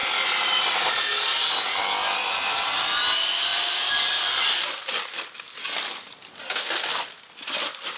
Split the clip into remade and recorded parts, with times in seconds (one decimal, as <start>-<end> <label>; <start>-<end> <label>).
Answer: 0.0-8.0 recorded